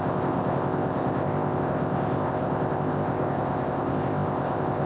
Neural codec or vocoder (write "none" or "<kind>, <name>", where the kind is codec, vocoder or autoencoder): codec, ZipCodec